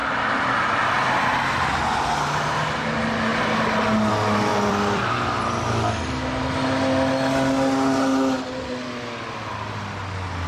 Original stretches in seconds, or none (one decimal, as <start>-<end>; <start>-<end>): 0.5-4.5; 5.1-10.5